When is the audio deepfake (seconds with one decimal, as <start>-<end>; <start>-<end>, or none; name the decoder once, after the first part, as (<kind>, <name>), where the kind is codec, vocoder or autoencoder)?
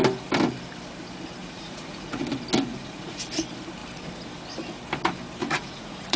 1.4-2.2 (vocoder, Vocos); 2.7-3.2; 5.4-6.2